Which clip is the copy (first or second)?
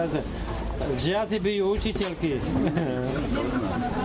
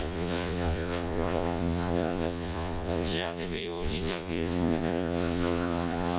second